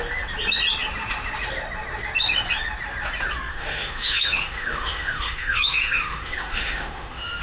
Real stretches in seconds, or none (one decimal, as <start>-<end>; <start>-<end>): 0.0-3.5